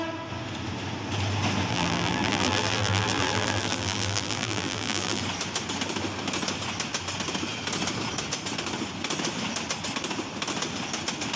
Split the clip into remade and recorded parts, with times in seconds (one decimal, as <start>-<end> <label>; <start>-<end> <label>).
0.0-1.7 recorded; 1.7-5.2 remade; 5.2-11.4 recorded